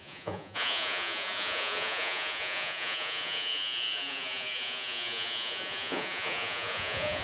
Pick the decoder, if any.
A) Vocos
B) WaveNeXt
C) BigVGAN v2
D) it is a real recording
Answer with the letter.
A